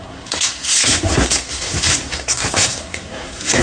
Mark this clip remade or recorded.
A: remade